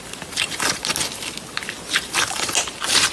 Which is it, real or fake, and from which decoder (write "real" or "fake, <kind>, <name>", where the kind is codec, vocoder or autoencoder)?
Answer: real